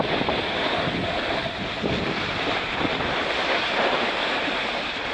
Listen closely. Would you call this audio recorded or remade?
remade